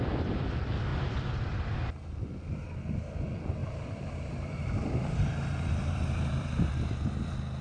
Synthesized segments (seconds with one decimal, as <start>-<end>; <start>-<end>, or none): 3.6-6.7